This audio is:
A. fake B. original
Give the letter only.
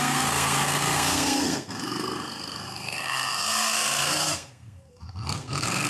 A